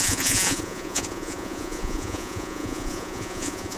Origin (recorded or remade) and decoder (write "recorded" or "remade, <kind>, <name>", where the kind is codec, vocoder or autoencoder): remade, vocoder, Vocos